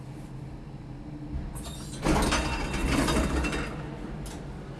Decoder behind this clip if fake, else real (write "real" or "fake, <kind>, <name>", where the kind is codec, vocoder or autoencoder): real